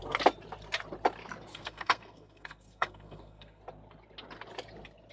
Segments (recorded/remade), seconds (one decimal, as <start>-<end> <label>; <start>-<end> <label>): 0.0-1.5 recorded; 1.5-3.6 remade; 3.6-5.1 recorded